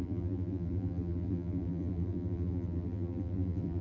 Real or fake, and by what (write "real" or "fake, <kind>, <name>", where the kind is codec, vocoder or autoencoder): fake, vocoder, BigVGAN v2